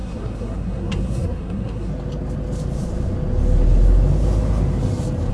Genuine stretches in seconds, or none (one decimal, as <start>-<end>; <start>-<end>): 1.9-5.3